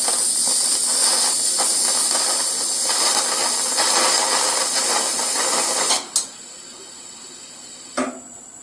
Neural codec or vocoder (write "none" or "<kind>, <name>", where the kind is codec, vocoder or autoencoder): none